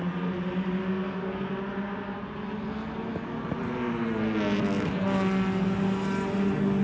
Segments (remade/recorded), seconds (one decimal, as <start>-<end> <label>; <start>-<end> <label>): 0.0-0.8 recorded; 0.8-1.5 remade; 1.5-6.8 recorded